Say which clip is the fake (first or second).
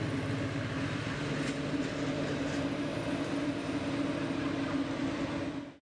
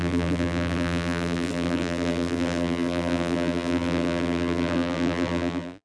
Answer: second